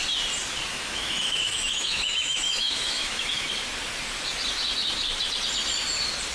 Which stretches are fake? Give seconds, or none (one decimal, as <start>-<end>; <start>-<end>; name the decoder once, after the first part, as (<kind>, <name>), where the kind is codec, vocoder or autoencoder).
0.7-3.5 (autoencoder, DAC-VAE)